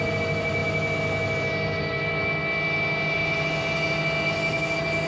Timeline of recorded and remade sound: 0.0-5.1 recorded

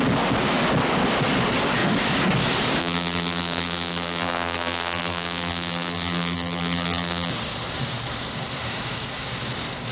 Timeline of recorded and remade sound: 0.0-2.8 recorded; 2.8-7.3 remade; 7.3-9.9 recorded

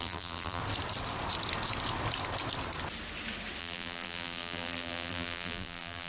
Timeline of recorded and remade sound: 0.0-0.6 remade; 0.6-3.6 recorded; 3.6-6.1 remade

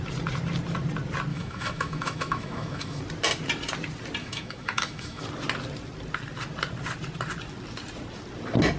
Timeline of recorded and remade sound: 0.0-1.3 recorded; 1.3-3.0 remade; 3.0-4.2 recorded; 4.2-5.2 remade; 5.2-8.8 recorded

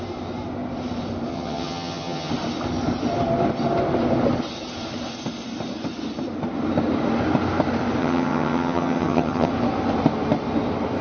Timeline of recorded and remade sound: 0.0-1.3 recorded; 1.3-2.3 remade; 2.3-8.0 recorded; 8.0-9.5 remade; 9.5-11.0 recorded

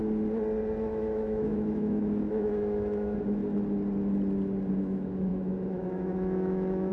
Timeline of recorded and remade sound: 0.0-0.8 recorded; 0.8-3.4 remade; 3.4-4.7 recorded; 4.7-6.9 remade

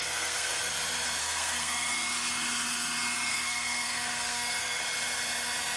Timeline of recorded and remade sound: 0.0-0.7 remade; 0.7-1.2 recorded; 1.2-1.9 remade; 1.9-3.3 recorded; 3.3-4.8 remade; 4.8-5.8 recorded

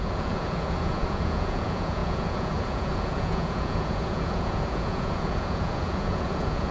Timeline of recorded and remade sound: 0.0-6.7 remade